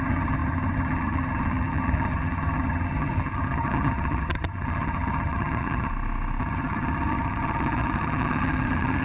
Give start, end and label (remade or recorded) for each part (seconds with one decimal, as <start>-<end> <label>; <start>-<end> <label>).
0.0-5.9 remade; 5.9-6.4 recorded; 6.4-9.0 remade